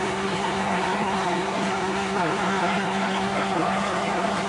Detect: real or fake fake